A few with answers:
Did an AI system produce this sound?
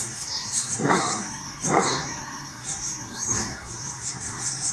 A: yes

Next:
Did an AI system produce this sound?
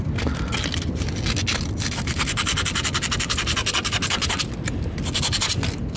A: no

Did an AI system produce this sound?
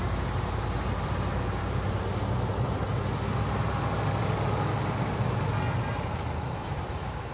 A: no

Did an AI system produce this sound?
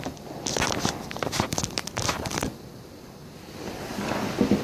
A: no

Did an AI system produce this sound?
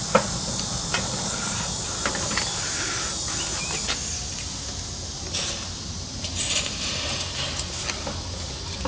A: no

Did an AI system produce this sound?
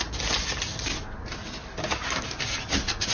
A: no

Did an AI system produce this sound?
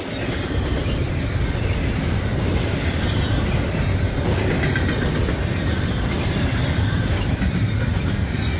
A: yes